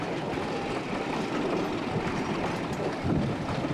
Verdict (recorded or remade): recorded